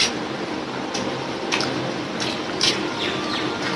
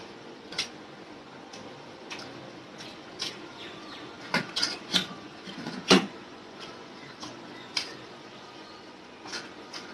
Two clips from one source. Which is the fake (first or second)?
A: second